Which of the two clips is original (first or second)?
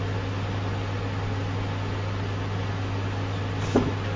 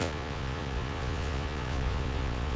first